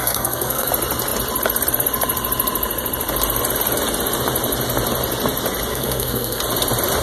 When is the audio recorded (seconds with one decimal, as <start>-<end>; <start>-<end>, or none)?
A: 0.7-5.7; 6.4-7.0